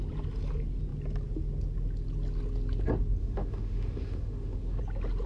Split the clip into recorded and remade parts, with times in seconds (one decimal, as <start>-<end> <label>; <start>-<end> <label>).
0.0-3.2 recorded; 3.2-4.8 remade; 4.8-5.3 recorded